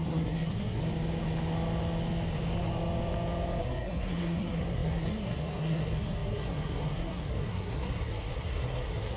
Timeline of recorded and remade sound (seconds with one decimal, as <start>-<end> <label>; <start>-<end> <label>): 0.0-0.8 remade; 0.8-3.6 recorded; 3.6-9.2 remade